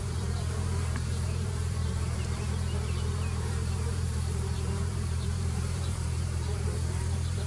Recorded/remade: remade